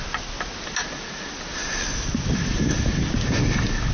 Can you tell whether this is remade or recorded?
recorded